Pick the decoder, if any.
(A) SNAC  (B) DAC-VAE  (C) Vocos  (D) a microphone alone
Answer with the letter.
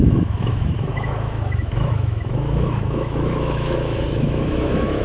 B